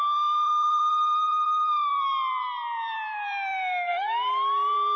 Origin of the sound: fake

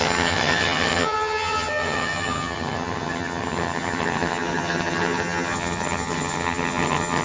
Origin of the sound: fake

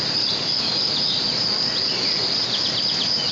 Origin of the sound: real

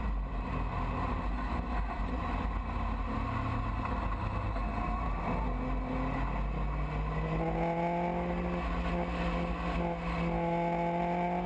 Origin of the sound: real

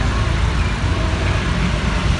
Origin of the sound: fake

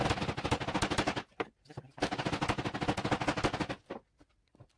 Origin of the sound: real